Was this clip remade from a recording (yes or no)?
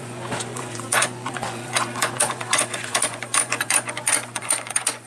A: yes